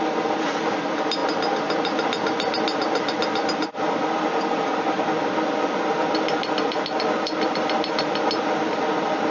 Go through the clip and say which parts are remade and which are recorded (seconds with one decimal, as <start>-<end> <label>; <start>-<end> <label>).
0.0-9.3 recorded